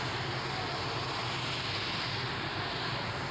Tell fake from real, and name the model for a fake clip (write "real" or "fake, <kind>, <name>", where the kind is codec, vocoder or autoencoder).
real